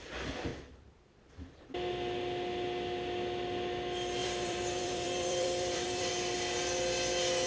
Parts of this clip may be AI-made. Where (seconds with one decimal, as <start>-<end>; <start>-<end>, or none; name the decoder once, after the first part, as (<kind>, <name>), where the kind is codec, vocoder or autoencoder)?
0.5-1.3 (vocoder, BigVGAN v2); 4.2-6.1